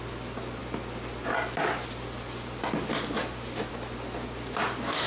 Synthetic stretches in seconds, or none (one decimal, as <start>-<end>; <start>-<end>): none